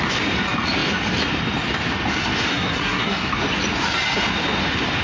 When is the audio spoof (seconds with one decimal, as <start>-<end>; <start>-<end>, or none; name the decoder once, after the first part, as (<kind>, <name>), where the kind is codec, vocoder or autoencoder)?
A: 2.5-3.3 (codec, SNAC)